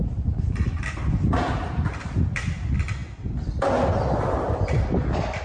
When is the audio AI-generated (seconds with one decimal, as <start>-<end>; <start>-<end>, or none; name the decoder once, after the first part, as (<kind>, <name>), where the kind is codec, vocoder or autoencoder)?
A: none